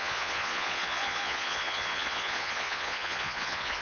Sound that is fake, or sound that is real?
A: fake